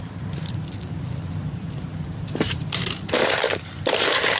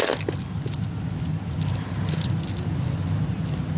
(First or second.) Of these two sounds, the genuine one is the second